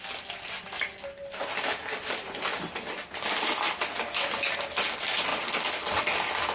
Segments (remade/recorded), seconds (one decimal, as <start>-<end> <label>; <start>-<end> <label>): 0.0-6.5 recorded